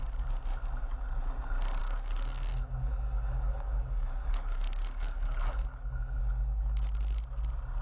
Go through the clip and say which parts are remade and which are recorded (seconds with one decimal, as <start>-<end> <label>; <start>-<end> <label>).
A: 0.0-1.8 recorded; 1.8-6.2 remade; 6.2-7.8 recorded